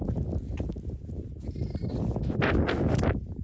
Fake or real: real